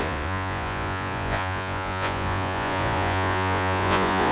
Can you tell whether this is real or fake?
fake